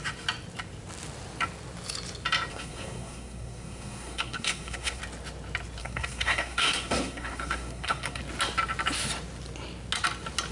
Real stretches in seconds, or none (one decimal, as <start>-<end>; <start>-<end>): 0.0-2.5; 5.0-5.8; 8.2-10.5